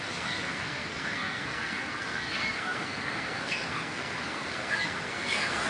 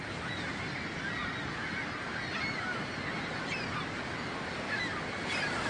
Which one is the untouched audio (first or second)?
second